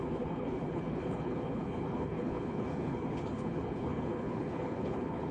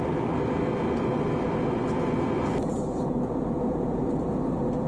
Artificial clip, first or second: first